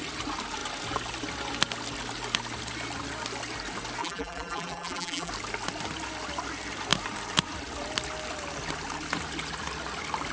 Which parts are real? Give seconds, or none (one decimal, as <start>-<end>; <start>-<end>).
0.0-4.0; 5.3-10.3